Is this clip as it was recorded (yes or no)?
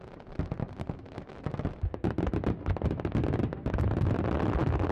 yes